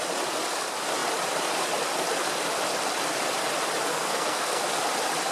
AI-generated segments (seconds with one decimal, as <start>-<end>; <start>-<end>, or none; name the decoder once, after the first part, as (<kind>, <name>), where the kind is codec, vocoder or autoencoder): 3.9-4.6 (codec, SNAC)

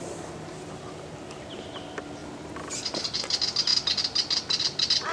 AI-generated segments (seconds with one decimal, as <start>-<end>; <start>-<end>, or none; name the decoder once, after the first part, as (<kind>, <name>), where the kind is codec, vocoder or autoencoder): 2.2-3.0 (vocoder, BigVGAN v2)

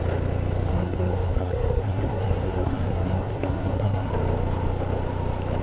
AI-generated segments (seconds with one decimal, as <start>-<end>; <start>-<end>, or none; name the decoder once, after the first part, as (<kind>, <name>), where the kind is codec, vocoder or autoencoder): 0.7-4.1 (codec, SNAC)